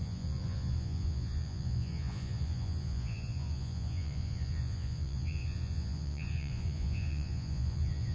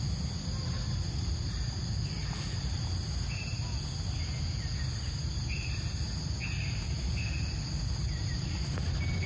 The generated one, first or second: first